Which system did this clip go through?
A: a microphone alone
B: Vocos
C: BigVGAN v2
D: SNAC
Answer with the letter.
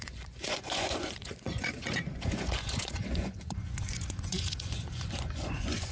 B